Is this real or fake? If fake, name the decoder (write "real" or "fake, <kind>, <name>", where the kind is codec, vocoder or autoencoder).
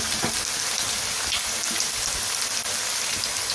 real